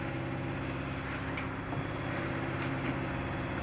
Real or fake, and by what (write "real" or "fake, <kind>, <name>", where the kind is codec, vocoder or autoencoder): real